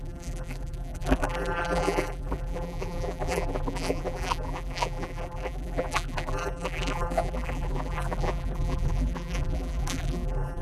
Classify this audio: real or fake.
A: fake